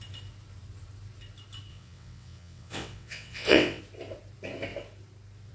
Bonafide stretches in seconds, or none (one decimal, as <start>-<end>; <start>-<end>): 0.0-1.7; 3.8-5.5